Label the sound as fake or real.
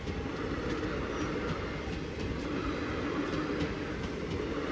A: real